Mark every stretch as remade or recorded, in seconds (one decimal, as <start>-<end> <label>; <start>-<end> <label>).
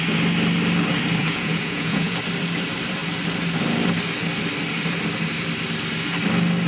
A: 0.0-1.2 recorded; 1.2-2.2 remade; 2.2-6.7 recorded